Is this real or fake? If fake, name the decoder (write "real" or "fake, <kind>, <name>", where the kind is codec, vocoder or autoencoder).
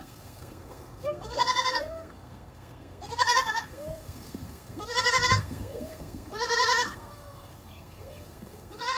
fake, codec, SNAC